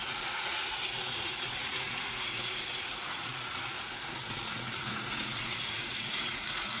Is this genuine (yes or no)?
no